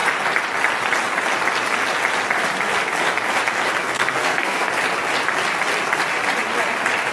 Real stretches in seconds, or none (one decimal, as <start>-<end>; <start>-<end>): 0.0-3.8; 4.7-7.1